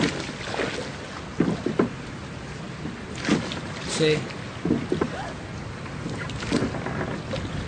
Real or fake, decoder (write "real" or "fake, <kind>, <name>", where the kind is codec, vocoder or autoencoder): real